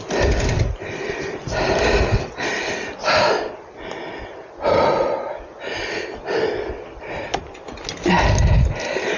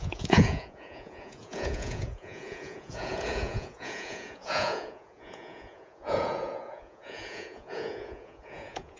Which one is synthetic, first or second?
second